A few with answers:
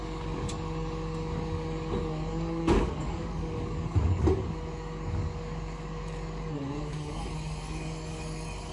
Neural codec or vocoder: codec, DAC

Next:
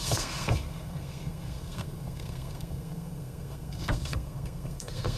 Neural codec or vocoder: codec, SNAC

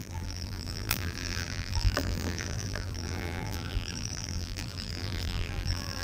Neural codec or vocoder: vocoder, BigVGAN v2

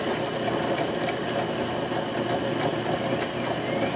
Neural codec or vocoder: none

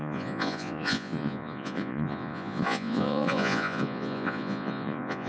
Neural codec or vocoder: vocoder, Vocos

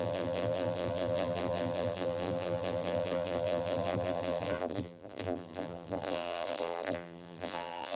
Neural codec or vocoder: vocoder, BigVGAN v2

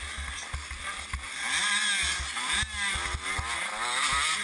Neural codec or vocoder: none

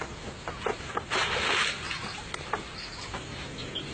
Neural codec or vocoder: none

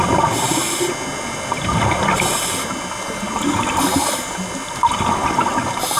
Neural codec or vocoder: none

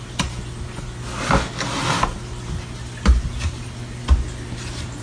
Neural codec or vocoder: none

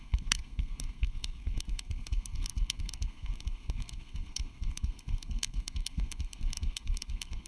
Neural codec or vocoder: codec, SNAC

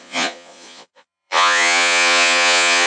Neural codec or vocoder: vocoder, Vocos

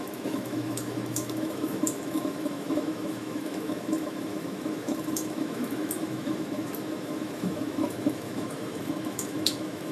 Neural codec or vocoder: autoencoder, DAC-VAE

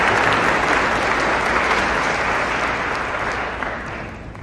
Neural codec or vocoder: none